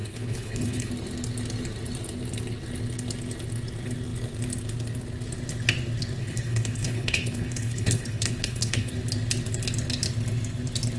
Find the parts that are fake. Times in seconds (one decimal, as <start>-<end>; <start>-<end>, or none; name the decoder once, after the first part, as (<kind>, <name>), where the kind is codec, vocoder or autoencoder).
0.0-0.9 (codec, HILCodec); 6.2-8.9